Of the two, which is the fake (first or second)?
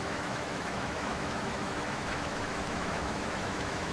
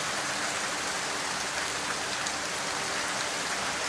first